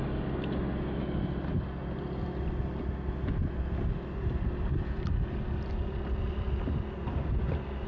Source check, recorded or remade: recorded